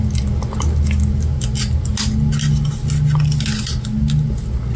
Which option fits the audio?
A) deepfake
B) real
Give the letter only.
B